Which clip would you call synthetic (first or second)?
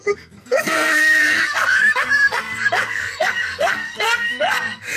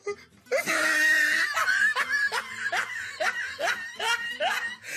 first